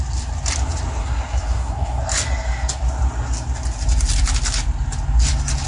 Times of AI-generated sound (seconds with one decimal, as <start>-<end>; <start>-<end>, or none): 1.0-2.0